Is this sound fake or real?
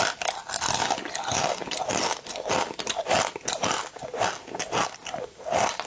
real